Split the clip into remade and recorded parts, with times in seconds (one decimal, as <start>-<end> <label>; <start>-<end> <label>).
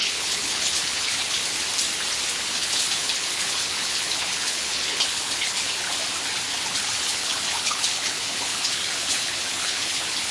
0.0-1.4 remade; 1.4-2.4 recorded; 2.4-6.0 remade; 6.0-6.7 recorded; 6.7-10.3 remade